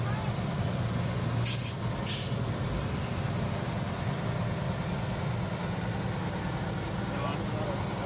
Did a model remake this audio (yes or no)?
no